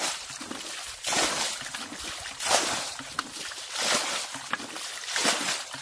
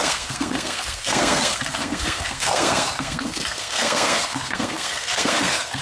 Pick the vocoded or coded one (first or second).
second